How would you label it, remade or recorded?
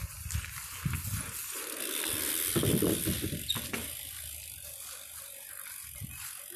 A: recorded